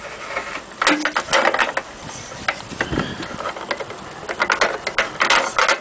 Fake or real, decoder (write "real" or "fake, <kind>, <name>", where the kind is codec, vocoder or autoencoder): real